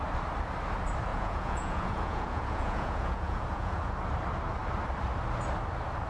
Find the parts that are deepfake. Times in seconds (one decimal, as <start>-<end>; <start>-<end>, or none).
1.1-3.9